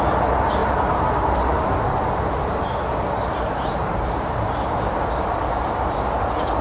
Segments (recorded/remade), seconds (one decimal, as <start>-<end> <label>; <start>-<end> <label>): 0.0-0.6 recorded; 0.6-4.5 remade; 4.5-6.6 recorded